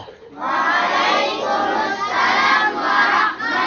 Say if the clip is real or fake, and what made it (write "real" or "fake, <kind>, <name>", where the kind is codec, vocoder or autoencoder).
real